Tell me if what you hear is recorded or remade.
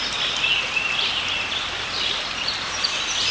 recorded